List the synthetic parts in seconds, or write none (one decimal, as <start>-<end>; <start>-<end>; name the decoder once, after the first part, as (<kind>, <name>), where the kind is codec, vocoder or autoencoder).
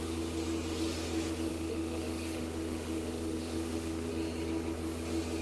1.5-4.1 (autoencoder, DAC-VAE)